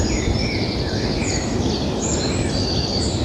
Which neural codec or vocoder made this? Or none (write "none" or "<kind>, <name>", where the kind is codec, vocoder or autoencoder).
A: none